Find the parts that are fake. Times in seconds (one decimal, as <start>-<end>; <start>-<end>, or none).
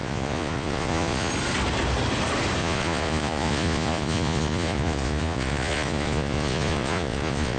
0.0-1.3; 2.6-7.6